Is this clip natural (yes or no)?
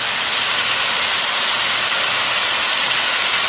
yes